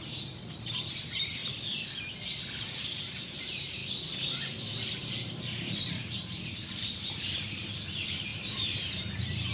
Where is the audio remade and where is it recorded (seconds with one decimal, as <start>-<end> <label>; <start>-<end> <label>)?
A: 0.0-1.4 remade; 1.4-2.6 recorded; 2.6-3.8 remade; 3.8-4.7 recorded; 4.7-9.5 remade